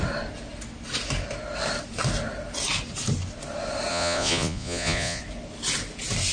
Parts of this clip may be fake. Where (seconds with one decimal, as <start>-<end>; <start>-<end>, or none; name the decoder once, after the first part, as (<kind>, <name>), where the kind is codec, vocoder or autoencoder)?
3.9-5.2 (vocoder, Vocos)